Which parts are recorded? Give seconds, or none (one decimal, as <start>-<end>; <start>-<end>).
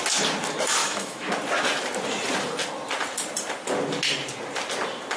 0.0-0.8; 1.3-5.2